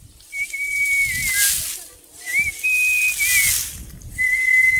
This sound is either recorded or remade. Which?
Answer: recorded